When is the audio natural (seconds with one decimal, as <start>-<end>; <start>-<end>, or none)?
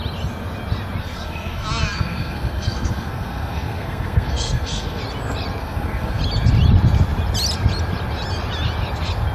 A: 0.0-1.0; 5.0-5.6; 6.2-9.3